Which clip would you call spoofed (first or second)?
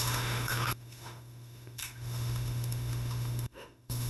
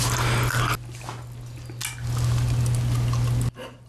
first